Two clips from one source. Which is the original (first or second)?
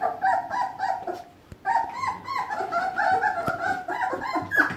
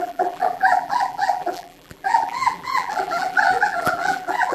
first